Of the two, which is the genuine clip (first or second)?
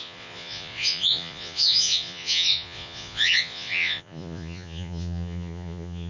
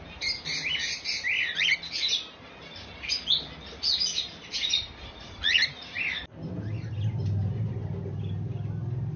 second